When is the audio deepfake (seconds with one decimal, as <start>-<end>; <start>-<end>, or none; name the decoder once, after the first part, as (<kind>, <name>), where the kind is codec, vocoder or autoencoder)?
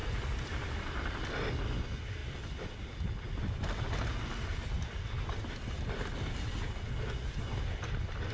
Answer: none